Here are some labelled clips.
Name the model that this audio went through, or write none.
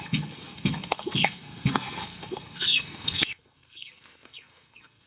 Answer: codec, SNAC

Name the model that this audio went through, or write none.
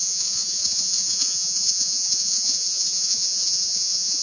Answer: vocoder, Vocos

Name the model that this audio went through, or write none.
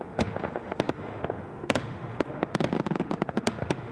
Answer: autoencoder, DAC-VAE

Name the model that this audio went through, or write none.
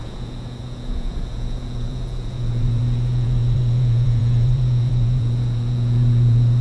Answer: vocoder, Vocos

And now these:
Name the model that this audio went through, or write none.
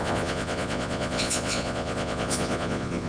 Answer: vocoder, Vocos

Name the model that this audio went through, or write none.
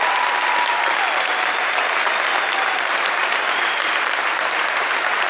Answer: vocoder, BigVGAN v2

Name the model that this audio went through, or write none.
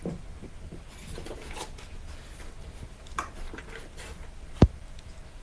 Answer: none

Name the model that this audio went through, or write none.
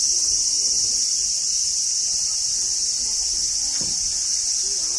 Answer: none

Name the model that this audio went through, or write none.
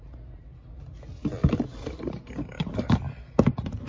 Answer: none